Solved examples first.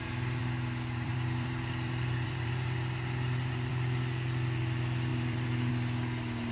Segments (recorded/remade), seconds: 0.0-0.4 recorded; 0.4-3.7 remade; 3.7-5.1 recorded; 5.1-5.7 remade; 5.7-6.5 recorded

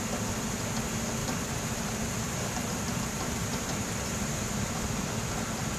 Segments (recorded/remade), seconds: 0.0-1.2 recorded; 1.2-4.7 remade; 4.7-5.8 recorded